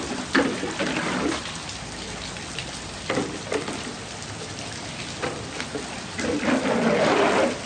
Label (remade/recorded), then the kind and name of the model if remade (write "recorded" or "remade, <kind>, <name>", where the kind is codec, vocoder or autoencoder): recorded